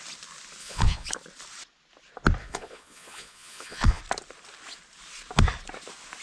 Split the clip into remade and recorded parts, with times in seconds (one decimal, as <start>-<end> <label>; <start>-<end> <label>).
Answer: 0.0-0.6 recorded; 0.6-1.1 remade; 1.1-2.4 recorded; 2.4-4.0 remade; 4.0-6.2 recorded